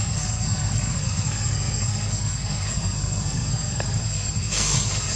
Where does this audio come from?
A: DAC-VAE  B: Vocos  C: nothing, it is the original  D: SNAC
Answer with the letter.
D